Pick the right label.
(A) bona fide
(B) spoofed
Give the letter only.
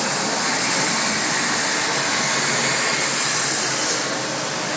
A